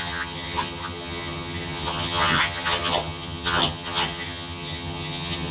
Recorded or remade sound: remade